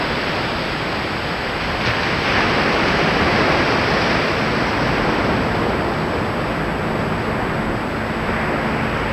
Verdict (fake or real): real